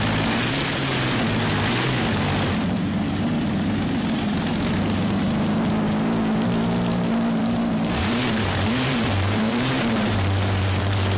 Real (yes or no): no